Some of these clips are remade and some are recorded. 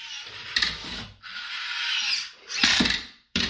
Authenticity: remade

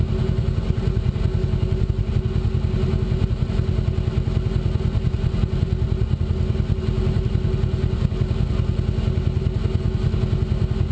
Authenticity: recorded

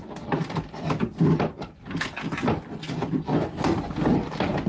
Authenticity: recorded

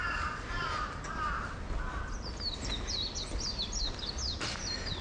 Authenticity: recorded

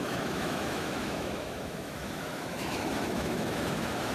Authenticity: remade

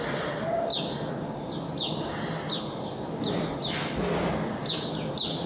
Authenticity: recorded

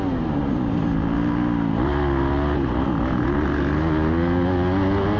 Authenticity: recorded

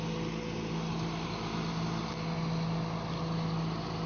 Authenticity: recorded